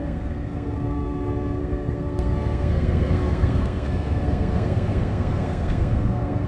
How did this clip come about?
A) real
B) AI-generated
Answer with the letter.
B